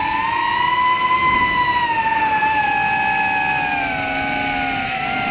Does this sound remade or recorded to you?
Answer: recorded